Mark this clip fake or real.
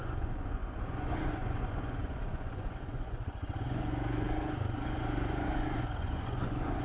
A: fake